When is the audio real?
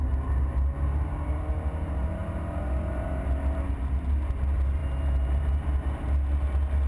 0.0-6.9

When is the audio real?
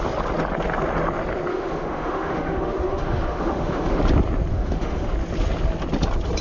0.0-1.5; 4.0-4.5; 5.1-6.4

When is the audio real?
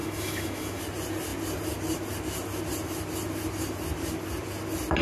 0.8-5.0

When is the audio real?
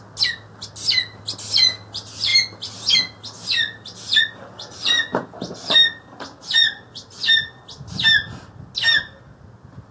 0.0-9.9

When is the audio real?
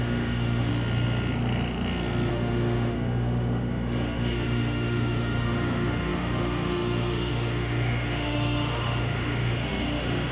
0.7-2.3